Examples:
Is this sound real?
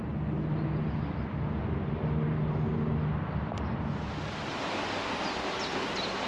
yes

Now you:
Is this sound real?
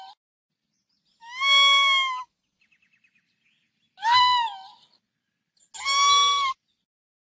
yes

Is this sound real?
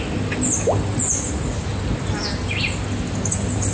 yes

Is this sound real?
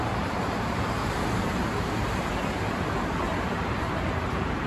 no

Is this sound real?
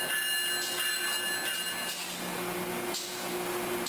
yes